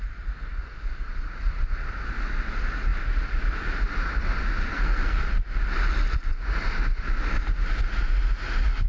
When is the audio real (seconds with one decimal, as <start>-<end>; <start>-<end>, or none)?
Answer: 0.0-4.7; 5.2-8.9